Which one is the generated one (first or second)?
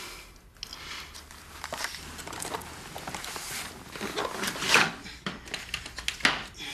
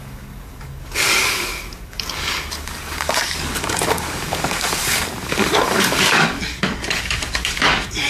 second